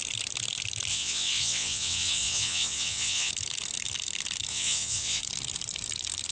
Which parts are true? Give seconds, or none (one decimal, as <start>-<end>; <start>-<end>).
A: 0.0-0.9; 3.3-4.5; 5.2-6.3